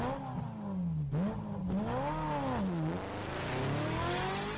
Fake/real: real